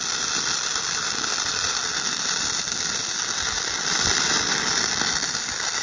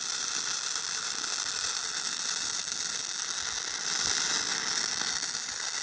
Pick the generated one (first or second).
first